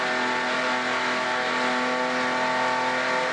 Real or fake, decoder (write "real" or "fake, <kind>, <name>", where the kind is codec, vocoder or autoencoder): real